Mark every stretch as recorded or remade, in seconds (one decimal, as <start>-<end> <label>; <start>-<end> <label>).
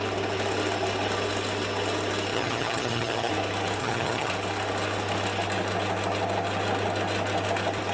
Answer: 0.0-2.3 recorded; 2.3-3.3 remade; 3.3-3.8 recorded; 3.8-4.3 remade; 4.3-7.9 recorded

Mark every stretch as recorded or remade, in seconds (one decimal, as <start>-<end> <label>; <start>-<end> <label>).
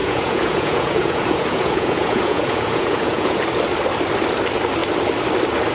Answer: 0.0-3.4 remade; 3.4-5.7 recorded